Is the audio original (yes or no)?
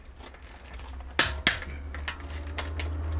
yes